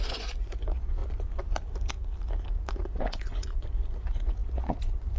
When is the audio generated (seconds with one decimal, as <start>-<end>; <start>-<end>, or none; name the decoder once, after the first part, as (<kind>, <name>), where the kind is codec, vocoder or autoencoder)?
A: 0.0-1.0 (vocoder, Vocos); 3.0-5.2